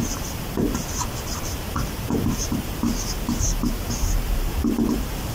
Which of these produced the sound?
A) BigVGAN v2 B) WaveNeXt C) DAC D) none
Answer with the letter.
A